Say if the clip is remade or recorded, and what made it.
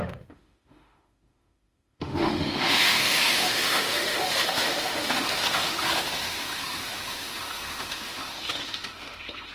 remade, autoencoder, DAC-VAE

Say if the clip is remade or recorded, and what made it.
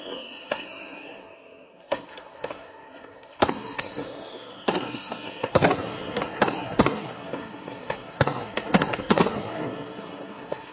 remade, codec, SNAC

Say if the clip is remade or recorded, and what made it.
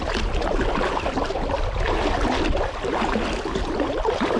recorded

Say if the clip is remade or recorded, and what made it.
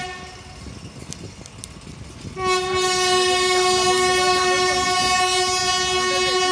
recorded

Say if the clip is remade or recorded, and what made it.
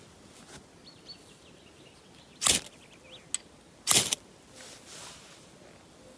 recorded